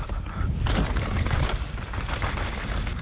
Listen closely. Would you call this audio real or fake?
real